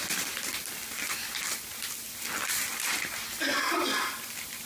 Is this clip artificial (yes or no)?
no